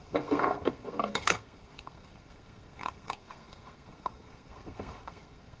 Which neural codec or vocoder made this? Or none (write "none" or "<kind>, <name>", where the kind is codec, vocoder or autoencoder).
codec, SNAC